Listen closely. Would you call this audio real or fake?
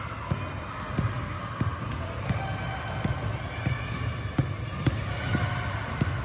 real